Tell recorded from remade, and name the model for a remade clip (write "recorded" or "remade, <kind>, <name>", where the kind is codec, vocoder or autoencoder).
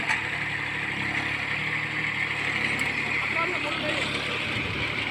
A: recorded